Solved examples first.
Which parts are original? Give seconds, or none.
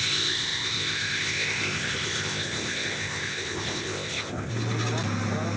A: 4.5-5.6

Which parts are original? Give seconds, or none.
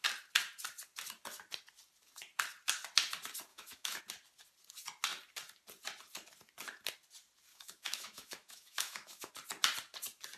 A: 0.0-3.5; 4.0-7.5; 9.3-10.4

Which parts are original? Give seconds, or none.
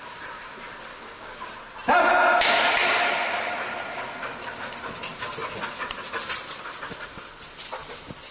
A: 0.0-0.9; 1.6-8.3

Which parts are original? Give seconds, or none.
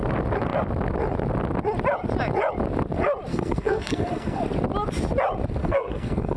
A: 0.0-3.3; 4.4-5.6